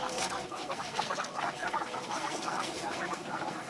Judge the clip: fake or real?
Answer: fake